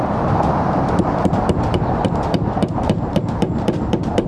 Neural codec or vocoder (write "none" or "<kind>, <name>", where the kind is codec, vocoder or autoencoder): vocoder, BigVGAN v2